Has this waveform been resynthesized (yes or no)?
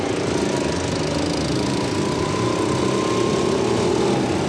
no